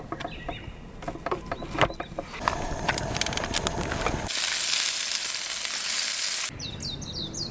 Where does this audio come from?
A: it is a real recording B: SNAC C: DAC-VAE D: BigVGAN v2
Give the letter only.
A